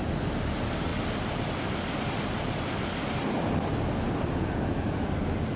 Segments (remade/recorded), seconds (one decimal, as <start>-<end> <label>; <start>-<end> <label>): 0.0-5.6 recorded